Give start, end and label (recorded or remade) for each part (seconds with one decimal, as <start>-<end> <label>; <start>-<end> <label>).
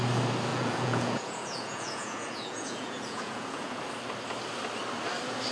0.0-0.5 recorded; 0.5-3.8 remade; 3.8-5.5 recorded